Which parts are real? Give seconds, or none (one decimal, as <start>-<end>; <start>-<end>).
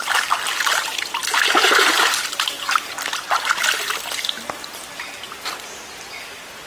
0.0-6.7